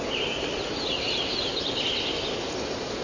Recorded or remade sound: recorded